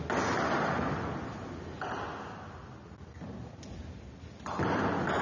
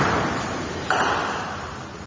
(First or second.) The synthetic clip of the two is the second